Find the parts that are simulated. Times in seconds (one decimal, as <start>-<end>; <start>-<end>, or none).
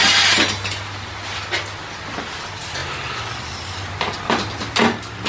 none